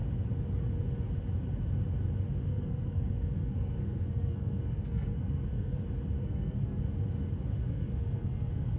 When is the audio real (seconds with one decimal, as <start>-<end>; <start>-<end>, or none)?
0.0-2.5; 5.8-6.2; 6.8-7.6